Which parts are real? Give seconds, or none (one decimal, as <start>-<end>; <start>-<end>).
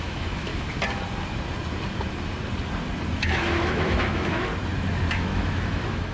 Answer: 0.5-3.1; 4.5-5.1